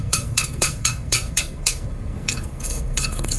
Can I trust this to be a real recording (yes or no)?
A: no